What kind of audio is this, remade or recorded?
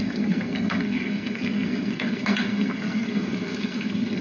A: remade